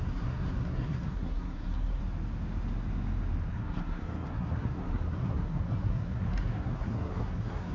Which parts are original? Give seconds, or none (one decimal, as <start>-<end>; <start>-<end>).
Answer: 2.0-3.5

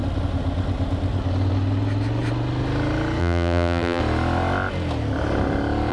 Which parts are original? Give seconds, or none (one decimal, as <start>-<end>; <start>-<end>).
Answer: 0.0-3.2; 4.0-5.9